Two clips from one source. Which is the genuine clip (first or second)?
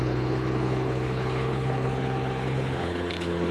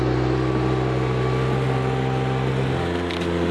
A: second